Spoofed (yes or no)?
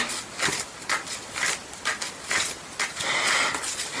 no